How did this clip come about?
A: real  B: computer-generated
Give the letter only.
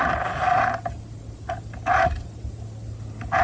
A